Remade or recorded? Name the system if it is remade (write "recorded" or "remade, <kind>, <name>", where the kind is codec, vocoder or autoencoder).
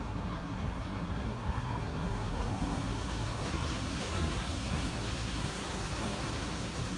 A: remade, codec, SNAC